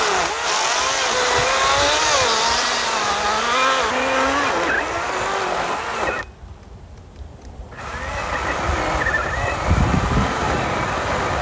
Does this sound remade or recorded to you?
recorded